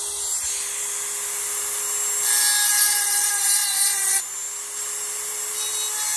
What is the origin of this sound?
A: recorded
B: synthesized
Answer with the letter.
A